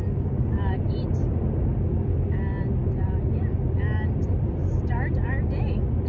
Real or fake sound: real